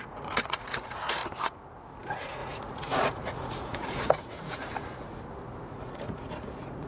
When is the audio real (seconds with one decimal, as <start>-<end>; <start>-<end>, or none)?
1.2-2.0; 4.7-5.7